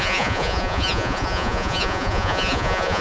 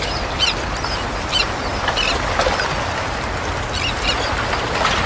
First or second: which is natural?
second